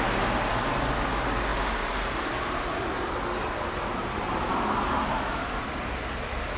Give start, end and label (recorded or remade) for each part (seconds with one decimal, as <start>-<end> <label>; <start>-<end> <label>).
0.0-1.5 recorded; 1.5-2.8 remade; 2.8-4.0 recorded; 4.0-4.5 remade; 4.5-6.6 recorded